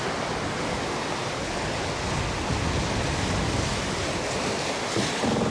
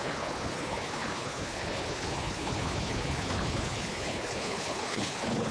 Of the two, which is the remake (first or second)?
second